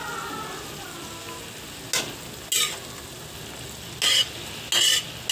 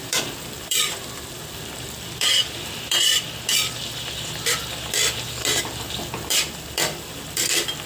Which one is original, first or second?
first